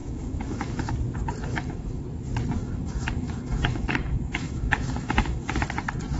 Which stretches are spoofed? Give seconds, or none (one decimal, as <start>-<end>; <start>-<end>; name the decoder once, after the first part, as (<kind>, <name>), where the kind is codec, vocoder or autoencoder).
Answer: 0.0-0.9 (autoencoder, DAC-VAE); 1.5-2.0; 2.6-5.6